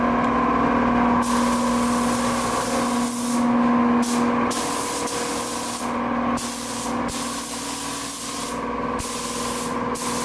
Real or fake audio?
real